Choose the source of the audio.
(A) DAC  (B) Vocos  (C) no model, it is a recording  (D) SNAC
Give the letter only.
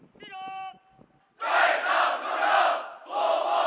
C